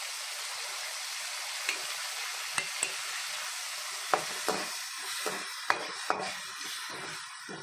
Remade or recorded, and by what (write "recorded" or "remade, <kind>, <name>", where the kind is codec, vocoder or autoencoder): recorded